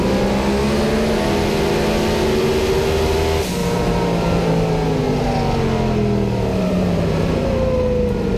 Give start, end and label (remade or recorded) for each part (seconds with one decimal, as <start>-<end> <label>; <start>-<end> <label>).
0.0-3.6 recorded; 3.6-4.5 remade; 4.5-6.5 recorded; 6.5-7.4 remade; 7.4-8.4 recorded